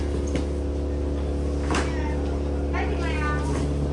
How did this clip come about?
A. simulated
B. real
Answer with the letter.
B